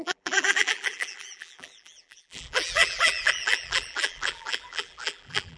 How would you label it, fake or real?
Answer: fake